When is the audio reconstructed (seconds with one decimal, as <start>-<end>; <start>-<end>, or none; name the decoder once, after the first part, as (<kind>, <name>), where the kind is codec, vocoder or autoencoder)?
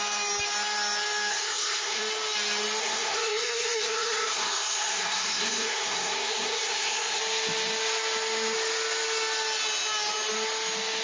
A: 1.3-2.0 (codec, SNAC); 2.8-7.2